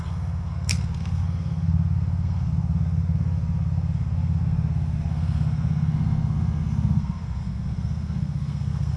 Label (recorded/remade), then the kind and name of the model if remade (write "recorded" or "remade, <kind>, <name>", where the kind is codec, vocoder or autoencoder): remade, codec, SNAC